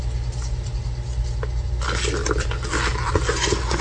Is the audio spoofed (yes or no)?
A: no